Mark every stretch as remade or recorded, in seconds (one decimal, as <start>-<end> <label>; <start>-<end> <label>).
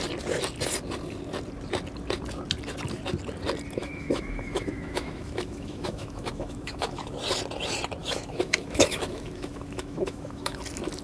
0.0-3.8 recorded; 3.8-7.2 remade; 7.2-8.0 recorded; 8.0-10.6 remade; 10.6-11.0 recorded